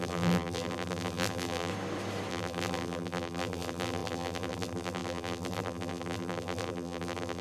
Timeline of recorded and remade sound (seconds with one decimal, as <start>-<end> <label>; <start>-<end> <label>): 0.0-1.7 remade; 1.7-2.3 recorded; 2.3-7.4 remade